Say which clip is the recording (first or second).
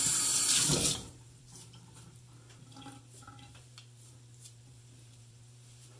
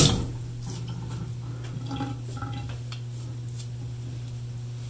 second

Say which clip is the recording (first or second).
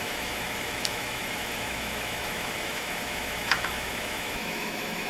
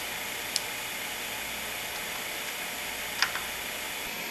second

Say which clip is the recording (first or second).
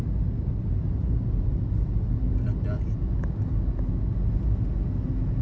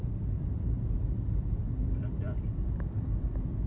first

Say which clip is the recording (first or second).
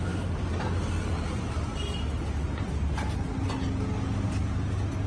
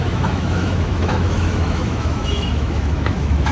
first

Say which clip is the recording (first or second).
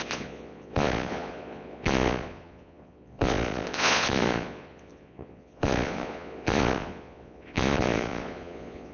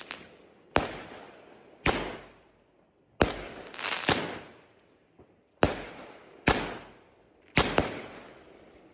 second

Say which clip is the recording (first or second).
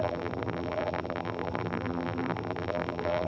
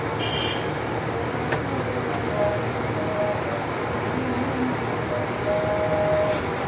second